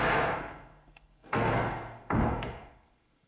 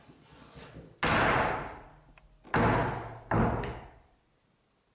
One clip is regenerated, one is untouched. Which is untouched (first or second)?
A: second